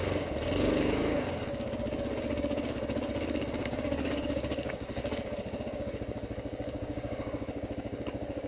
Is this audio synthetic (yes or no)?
yes